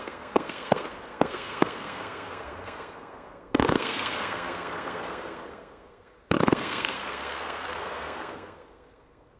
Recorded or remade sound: remade